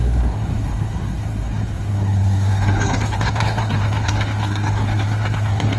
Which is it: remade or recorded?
remade